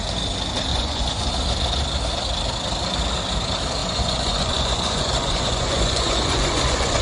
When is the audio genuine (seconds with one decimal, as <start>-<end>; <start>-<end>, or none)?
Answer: 0.0-0.7; 1.3-3.8